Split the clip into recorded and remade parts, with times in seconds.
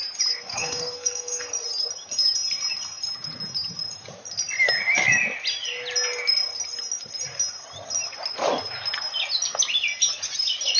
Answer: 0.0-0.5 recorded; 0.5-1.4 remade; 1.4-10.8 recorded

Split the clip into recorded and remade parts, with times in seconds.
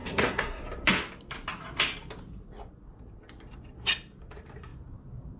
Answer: 0.0-0.6 remade; 0.6-5.4 recorded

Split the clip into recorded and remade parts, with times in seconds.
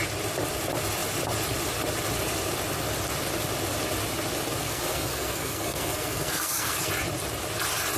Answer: 0.0-4.6 recorded; 4.6-6.9 remade; 6.9-8.0 recorded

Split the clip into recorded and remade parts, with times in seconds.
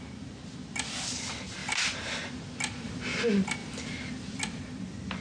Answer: 0.0-5.2 recorded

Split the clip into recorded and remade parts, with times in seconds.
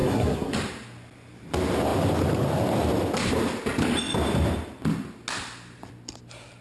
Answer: 0.0-0.5 remade; 0.5-6.6 recorded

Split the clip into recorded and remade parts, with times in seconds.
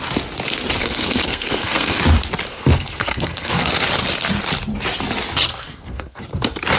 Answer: 0.0-0.8 recorded; 0.8-2.0 remade; 2.0-2.5 recorded; 2.5-3.8 remade; 3.8-5.5 recorded; 5.5-6.2 remade; 6.2-6.8 recorded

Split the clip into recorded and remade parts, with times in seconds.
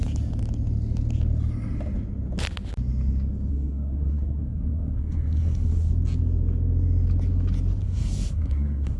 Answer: 0.0-3.5 recorded; 3.5-5.9 remade; 5.9-7.8 recorded; 7.8-9.0 remade